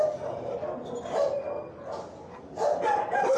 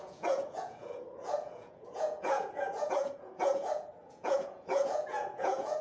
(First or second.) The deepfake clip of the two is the second